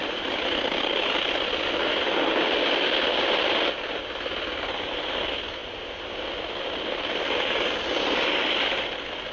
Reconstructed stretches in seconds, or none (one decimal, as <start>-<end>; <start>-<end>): none